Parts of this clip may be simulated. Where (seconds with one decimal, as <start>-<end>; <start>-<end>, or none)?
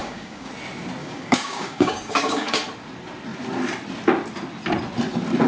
0.0-0.5; 1.0-2.6